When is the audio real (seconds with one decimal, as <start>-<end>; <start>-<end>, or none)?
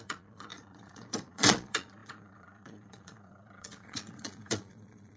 none